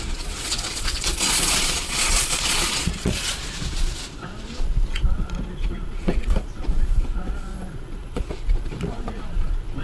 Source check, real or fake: fake